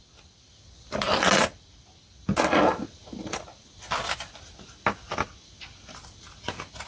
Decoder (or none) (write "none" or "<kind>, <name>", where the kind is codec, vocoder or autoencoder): none